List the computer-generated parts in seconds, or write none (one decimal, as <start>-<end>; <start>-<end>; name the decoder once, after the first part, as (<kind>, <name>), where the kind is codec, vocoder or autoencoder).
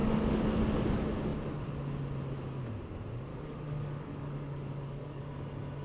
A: 0.0-0.6 (codec, DAC); 3.3-5.2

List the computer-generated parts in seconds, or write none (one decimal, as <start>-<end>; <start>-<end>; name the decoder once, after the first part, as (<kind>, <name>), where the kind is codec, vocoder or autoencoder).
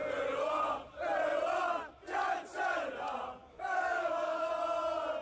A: 3.4-4.5 (codec, DAC)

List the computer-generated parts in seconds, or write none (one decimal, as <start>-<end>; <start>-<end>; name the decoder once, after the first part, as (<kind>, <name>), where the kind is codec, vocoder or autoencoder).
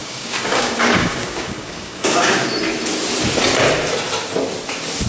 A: 0.0-2.5 (codec, DAC)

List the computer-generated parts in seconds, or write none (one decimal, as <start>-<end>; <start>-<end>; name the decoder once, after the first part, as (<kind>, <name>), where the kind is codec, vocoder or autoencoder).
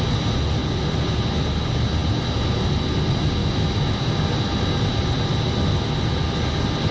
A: none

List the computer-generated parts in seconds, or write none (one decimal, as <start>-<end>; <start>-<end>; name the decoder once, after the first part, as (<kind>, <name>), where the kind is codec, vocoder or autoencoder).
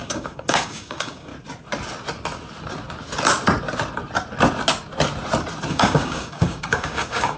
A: 0.0-1.3 (codec, DAC); 5.7-7.4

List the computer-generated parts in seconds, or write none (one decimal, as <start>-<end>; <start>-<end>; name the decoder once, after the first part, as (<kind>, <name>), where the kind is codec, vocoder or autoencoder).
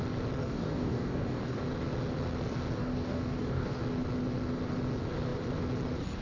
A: 0.4-1.6 (codec, DAC); 2.8-3.8